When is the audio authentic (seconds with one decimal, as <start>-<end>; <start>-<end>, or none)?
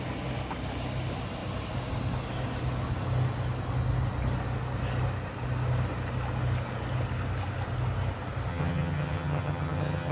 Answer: 0.0-8.5